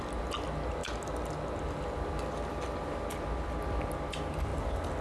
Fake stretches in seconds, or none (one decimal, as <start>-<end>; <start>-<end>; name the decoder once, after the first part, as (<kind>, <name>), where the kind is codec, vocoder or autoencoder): none